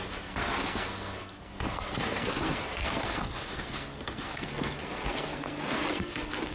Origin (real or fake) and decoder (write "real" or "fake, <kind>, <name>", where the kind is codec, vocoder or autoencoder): fake, codec, SNAC